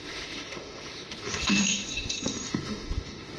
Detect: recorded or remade remade